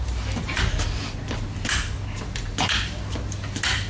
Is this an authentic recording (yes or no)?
yes